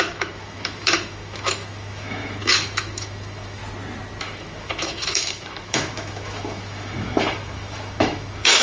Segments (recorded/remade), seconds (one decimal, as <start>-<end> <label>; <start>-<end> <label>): 0.0-3.6 remade; 3.6-4.2 recorded; 4.2-8.6 remade